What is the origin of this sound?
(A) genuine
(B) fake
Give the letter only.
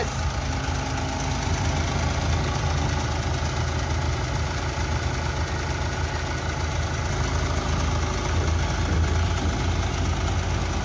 A